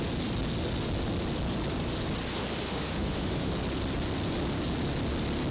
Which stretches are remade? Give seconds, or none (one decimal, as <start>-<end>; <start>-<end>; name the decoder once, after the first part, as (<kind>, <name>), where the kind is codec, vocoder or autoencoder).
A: 2.7-3.5 (autoencoder, DAC-VAE)